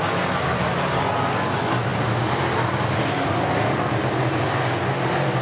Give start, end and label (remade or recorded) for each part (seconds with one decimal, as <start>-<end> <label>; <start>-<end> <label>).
0.0-5.4 recorded